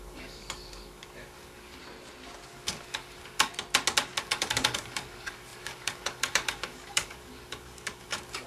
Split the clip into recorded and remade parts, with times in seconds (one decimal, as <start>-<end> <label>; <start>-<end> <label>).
0.0-1.8 remade; 1.8-2.5 recorded; 2.5-3.5 remade; 3.5-4.2 recorded; 4.2-8.5 remade